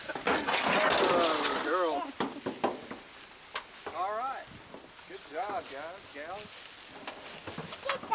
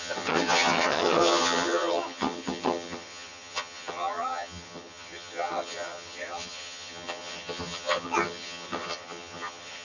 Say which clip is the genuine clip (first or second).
first